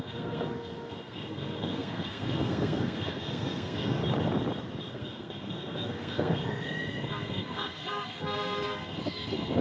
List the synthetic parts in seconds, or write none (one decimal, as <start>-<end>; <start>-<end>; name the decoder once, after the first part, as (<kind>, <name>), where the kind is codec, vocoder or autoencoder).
0.0-4.0 (codec, SNAC); 4.9-9.6

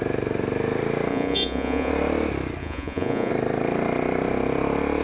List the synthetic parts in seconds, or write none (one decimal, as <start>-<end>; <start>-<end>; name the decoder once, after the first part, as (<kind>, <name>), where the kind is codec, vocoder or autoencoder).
1.1-1.9 (vocoder, Vocos); 2.6-3.3

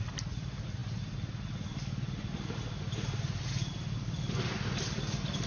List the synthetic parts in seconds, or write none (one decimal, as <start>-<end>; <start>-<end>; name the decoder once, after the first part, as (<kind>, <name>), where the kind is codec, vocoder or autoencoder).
none

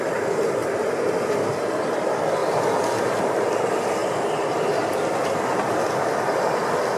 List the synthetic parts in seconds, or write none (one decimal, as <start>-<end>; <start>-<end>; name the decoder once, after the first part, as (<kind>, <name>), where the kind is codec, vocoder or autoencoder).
0.0-4.0 (vocoder, BigVGAN v2); 4.7-7.0

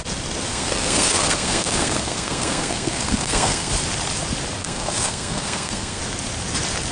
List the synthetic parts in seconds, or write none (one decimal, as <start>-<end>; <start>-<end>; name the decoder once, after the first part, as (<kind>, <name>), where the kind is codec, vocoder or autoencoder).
0.5-3.7 (codec, SNAC); 4.6-6.0

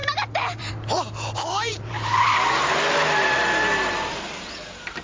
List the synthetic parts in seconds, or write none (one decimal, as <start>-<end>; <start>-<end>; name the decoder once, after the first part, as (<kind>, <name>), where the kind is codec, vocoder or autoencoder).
0.0-0.7 (vocoder, BigVGAN v2); 1.7-2.8

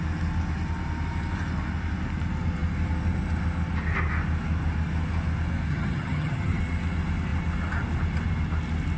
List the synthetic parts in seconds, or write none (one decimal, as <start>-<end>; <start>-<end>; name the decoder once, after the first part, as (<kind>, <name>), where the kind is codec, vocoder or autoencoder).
5.7-6.6 (vocoder, HiFi-GAN)

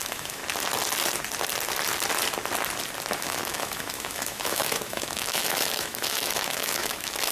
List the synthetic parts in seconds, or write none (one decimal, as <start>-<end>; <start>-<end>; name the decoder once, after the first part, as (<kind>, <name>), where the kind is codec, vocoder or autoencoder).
0.0-0.4 (autoencoder, DAC-VAE); 3.2-7.3